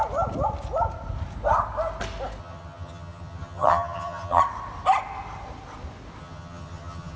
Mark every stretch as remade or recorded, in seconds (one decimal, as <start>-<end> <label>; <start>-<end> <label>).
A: 0.0-2.4 recorded; 2.4-4.4 remade; 4.4-6.2 recorded; 6.2-7.2 remade